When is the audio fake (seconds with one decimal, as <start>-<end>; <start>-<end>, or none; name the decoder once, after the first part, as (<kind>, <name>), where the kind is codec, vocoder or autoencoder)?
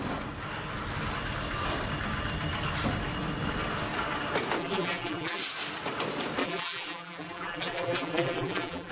4.6-5.4 (vocoder, BigVGAN v2); 6.4-8.9